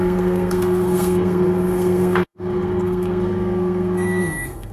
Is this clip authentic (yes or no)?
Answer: no